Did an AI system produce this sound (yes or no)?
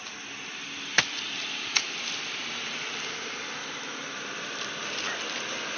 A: yes